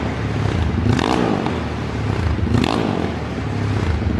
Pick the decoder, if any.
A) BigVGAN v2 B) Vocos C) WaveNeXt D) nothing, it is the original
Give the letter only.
D